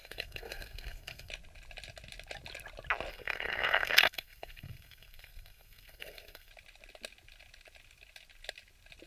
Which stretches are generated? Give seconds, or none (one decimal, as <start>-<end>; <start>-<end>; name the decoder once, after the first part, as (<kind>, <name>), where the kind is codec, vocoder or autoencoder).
0.0-1.3 (codec, SNAC); 3.1-6.5